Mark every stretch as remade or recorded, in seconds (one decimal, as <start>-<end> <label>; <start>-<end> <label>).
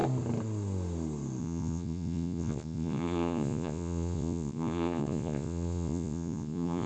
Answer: 0.0-1.4 recorded; 1.4-6.9 remade